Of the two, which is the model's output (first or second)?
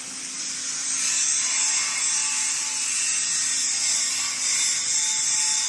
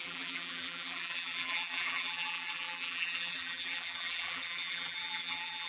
second